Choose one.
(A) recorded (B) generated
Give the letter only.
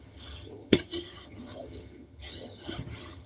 B